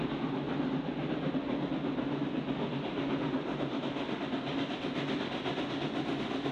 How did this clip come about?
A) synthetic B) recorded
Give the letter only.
B